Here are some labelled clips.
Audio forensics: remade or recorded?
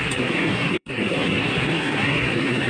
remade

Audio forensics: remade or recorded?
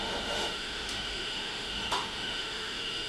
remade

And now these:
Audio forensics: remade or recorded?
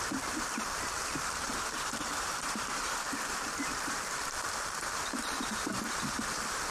remade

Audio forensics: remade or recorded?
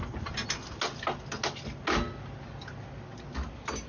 recorded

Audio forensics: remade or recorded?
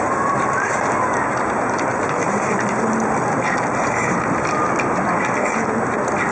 recorded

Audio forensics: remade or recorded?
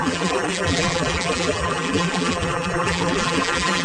remade